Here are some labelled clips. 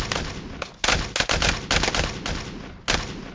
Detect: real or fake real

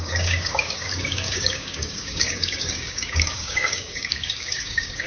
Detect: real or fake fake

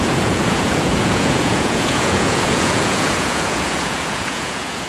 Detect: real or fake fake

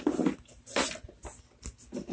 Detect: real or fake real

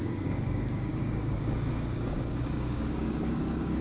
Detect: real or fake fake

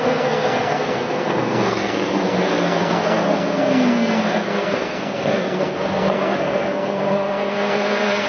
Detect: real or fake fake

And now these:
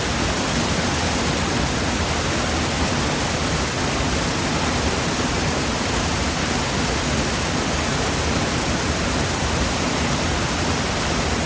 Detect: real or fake real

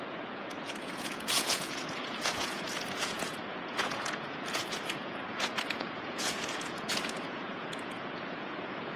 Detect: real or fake fake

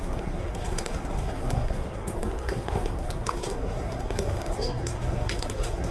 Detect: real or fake fake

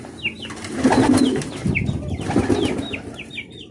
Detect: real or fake real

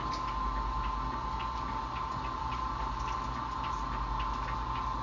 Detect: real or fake real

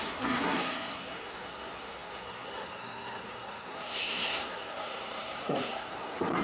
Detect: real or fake fake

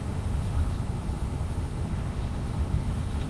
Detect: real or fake fake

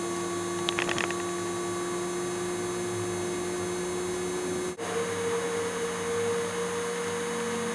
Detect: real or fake real